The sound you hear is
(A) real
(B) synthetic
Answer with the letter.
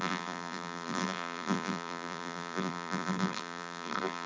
B